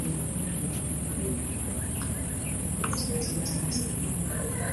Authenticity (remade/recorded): recorded